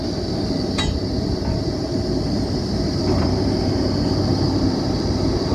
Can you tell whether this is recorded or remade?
recorded